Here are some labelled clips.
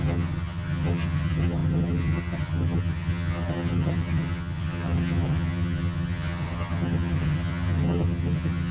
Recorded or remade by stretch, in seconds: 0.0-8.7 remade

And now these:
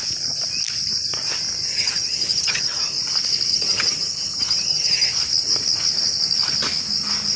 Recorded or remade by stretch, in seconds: 0.0-1.7 recorded; 1.7-2.8 remade; 2.8-3.5 recorded; 3.5-5.1 remade; 5.1-7.4 recorded

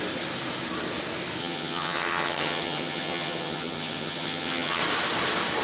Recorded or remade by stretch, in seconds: 0.0-1.4 recorded; 1.4-4.8 remade; 4.8-5.6 recorded

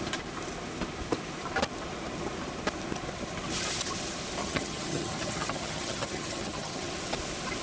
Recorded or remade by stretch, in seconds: 0.0-4.4 recorded; 4.4-6.9 remade; 6.9-7.6 recorded

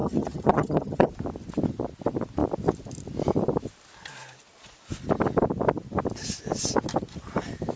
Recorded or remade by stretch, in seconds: 0.0-1.1 remade; 1.1-7.8 recorded

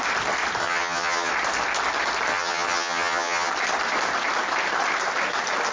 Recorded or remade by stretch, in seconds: 0.0-0.6 recorded; 0.6-1.3 remade; 1.3-2.3 recorded; 2.3-3.5 remade; 3.5-5.7 recorded

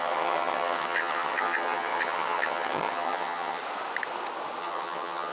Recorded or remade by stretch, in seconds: 0.0-3.6 remade; 3.6-4.6 recorded; 4.6-5.3 remade